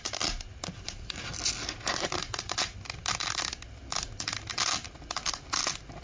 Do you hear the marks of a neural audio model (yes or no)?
no